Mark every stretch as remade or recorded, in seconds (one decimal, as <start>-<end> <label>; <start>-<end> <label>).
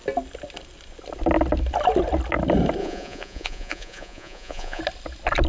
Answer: 0.0-2.8 recorded; 2.8-4.8 remade; 4.8-5.5 recorded